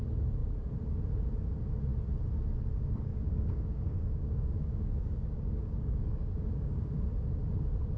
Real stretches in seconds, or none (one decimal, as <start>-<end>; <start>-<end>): 0.0-3.1; 6.9-8.0